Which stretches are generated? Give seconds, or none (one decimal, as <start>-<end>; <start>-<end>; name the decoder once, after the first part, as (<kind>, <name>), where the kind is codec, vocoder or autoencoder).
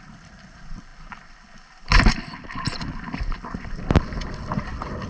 none